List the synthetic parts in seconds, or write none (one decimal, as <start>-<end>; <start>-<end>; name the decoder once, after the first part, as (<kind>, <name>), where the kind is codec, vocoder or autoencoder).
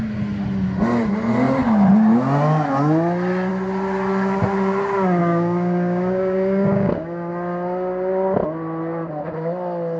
5.2-7.3 (codec, DAC)